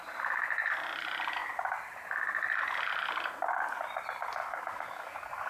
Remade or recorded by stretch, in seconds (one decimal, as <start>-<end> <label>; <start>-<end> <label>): 0.0-4.4 recorded; 4.4-5.5 remade